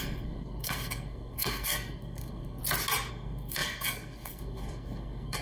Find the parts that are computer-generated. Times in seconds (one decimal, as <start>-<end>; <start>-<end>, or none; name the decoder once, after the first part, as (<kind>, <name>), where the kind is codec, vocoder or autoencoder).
0.0-2.6 (codec, SNAC); 3.1-5.4